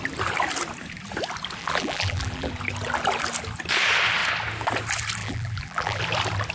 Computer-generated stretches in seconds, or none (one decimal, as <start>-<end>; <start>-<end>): 1.6-2.5; 5.2-6.0